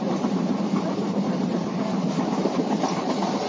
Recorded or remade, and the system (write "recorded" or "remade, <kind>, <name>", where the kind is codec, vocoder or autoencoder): remade, vocoder, BigVGAN v2